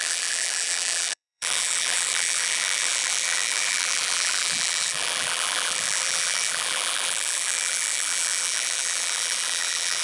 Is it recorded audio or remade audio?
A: remade